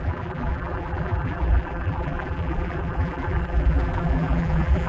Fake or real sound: fake